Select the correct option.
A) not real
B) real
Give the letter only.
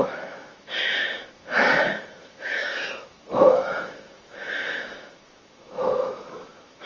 A